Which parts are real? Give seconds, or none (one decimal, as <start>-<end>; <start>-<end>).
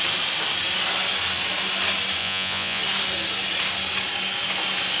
0.0-2.2; 2.8-5.0